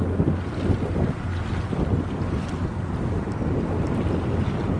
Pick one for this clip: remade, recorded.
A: recorded